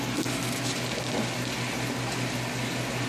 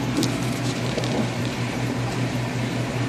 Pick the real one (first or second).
first